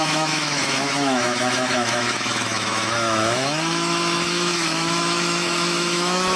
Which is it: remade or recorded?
remade